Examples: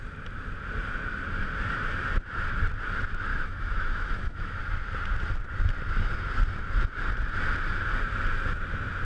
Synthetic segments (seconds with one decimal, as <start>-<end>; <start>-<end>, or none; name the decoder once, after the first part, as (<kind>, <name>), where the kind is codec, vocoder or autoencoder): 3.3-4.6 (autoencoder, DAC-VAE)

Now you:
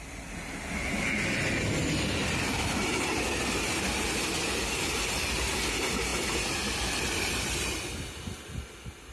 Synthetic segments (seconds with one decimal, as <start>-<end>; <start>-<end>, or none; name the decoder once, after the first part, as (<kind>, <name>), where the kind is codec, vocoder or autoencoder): none

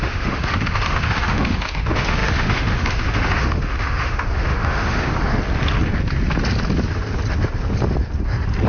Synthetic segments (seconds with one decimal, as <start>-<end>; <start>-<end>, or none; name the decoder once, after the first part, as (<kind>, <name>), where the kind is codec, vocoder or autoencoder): 0.0-5.1 (autoencoder, DAC-VAE)

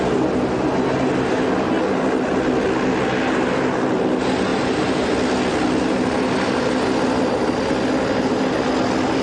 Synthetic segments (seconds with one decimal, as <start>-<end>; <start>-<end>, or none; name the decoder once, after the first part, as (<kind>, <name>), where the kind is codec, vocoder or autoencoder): none

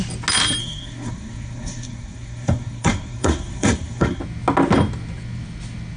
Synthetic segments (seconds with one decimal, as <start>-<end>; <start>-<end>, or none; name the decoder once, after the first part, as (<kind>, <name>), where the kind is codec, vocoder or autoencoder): 0.6-4.2 (codec, SNAC)

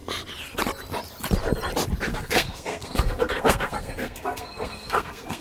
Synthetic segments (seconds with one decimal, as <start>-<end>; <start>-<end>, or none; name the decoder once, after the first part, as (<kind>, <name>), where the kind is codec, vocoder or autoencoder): 2.1-5.4 (codec, SNAC)

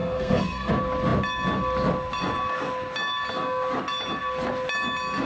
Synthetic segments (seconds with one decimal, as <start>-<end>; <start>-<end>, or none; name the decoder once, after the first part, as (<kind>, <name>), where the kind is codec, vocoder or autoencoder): 0.0-0.7 (codec, SNAC)